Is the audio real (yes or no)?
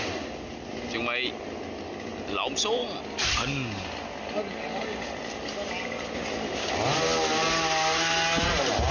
yes